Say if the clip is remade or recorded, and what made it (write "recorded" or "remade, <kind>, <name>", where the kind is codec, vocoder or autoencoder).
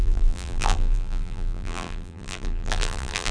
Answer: remade, vocoder, BigVGAN v2